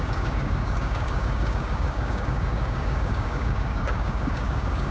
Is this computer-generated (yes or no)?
yes